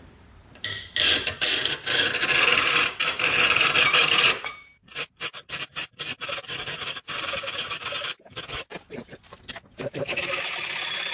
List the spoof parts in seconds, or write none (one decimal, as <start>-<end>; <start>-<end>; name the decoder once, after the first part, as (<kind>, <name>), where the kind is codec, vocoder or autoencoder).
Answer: 0.0-11.1 (vocoder, BigVGAN v2)